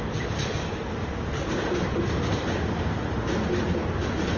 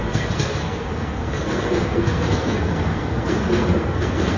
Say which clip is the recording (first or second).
first